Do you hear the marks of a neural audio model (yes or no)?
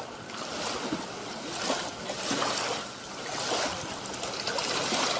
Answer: no